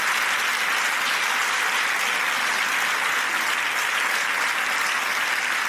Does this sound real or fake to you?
real